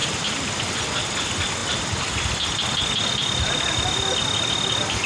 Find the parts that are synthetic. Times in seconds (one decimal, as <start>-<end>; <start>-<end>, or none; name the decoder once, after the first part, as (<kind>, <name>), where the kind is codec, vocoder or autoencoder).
none